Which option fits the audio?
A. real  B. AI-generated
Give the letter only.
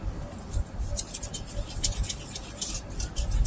A